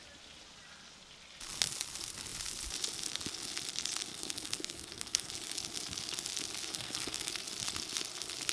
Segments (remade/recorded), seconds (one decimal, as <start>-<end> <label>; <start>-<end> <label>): 0.0-4.1 recorded; 4.1-5.3 remade; 5.3-6.7 recorded; 6.7-7.3 remade; 7.3-8.5 recorded